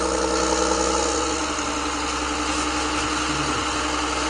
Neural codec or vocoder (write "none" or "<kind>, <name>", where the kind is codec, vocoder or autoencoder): none